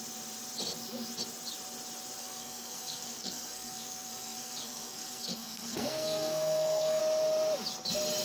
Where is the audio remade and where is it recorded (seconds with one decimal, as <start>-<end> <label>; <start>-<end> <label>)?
0.0-2.2 recorded; 2.2-7.0 remade; 7.0-8.2 recorded

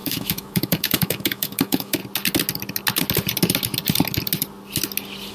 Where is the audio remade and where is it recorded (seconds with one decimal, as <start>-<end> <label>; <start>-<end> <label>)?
0.0-2.0 remade; 2.0-5.3 recorded

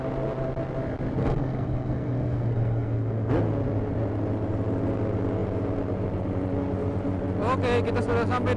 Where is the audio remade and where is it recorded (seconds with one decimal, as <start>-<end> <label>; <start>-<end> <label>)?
0.0-1.2 recorded; 1.2-3.3 remade; 3.3-8.6 recorded

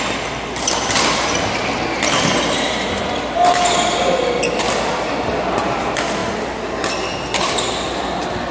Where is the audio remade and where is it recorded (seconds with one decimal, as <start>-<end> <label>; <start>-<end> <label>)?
0.0-8.5 recorded

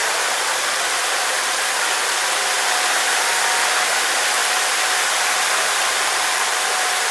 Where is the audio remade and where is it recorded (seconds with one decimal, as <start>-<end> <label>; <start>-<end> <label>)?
0.0-2.2 remade; 2.2-4.4 recorded; 4.4-7.1 remade

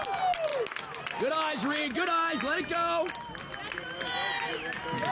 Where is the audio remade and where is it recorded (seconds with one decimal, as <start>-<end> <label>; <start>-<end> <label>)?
0.0-5.1 recorded